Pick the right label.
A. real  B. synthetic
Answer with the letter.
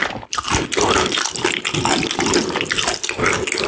A